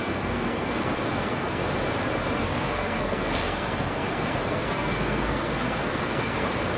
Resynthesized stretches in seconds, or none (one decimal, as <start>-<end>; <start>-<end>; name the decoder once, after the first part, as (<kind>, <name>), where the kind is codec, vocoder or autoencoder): 0.0-1.6 (codec, SNAC); 2.3-6.8